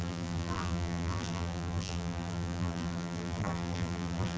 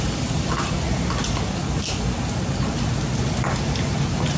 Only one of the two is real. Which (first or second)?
second